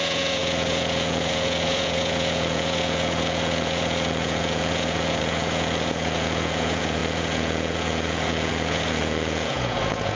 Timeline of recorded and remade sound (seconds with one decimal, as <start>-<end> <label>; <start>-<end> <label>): 0.0-10.2 remade